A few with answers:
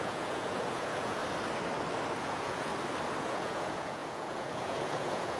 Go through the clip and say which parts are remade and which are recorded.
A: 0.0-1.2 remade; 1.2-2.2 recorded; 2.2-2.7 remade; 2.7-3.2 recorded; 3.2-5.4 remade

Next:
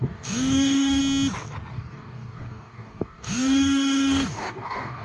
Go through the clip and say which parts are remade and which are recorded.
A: 0.0-1.0 remade; 1.0-1.7 recorded; 1.7-5.0 remade

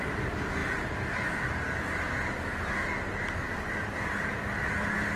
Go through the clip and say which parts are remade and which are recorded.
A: 0.0-5.2 recorded

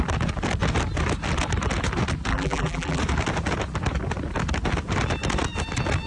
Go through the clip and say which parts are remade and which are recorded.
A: 0.0-2.3 recorded; 2.3-3.0 remade; 3.0-6.1 recorded

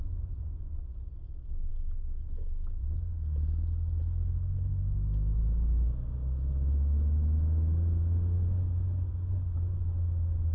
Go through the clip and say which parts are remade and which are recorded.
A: 0.0-10.5 recorded

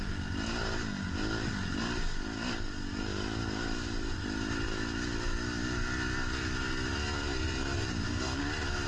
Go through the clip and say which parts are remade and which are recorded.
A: 0.0-8.9 recorded

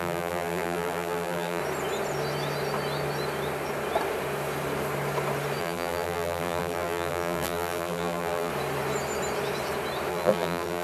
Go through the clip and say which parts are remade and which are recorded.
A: 0.0-1.6 remade; 1.6-5.6 recorded; 5.6-8.5 remade; 8.5-10.1 recorded; 10.1-10.8 remade

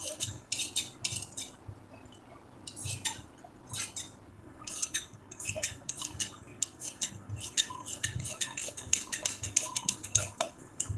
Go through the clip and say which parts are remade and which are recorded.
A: 0.0-0.5 remade; 0.5-4.3 recorded; 4.3-11.0 remade